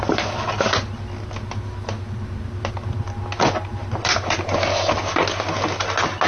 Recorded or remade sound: recorded